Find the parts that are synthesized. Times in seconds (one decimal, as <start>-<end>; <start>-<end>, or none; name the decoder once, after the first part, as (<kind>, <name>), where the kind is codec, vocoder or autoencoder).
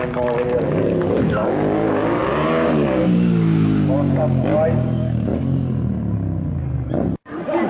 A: 0.0-5.3 (codec, DAC)